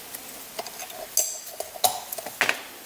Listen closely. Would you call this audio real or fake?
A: real